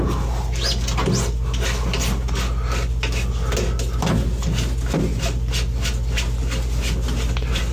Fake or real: real